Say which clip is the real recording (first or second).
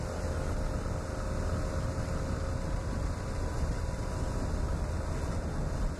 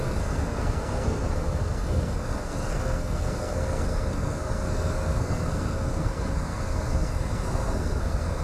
first